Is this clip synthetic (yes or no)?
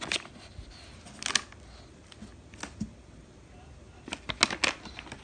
no